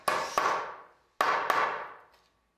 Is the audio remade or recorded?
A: recorded